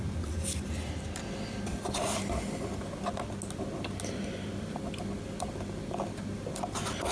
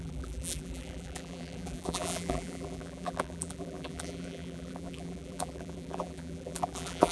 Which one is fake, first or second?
second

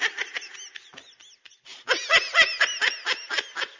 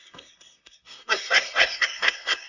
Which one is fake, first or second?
second